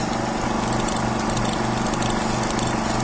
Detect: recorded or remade recorded